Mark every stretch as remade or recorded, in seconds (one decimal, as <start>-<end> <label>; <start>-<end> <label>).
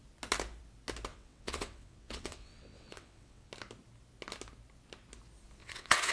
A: 0.0-1.1 recorded; 1.1-3.5 remade; 3.5-5.6 recorded; 5.6-6.1 remade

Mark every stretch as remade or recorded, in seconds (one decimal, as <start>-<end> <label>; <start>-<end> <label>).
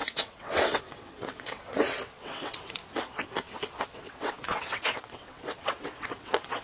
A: 0.0-2.8 remade; 2.8-3.8 recorded; 3.8-6.6 remade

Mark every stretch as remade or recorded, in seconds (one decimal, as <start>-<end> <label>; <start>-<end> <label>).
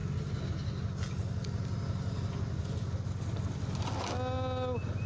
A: 0.0-5.1 recorded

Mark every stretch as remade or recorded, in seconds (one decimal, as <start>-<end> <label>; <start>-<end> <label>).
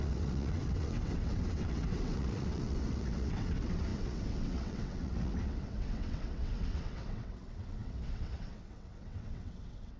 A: 0.0-10.0 remade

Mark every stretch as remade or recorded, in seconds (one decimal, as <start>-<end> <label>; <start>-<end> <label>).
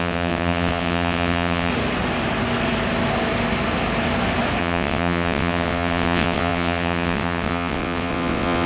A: 0.0-1.7 remade; 1.7-4.6 recorded; 4.6-8.7 remade